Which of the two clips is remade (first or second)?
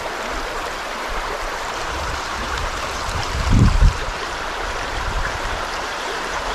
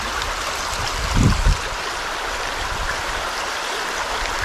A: first